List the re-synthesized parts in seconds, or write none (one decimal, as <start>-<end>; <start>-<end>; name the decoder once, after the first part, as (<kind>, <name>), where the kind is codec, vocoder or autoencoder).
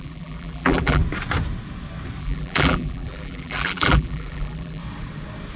0.0-1.0 (vocoder, BigVGAN v2); 2.2-4.8